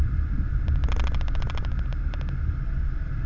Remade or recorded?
recorded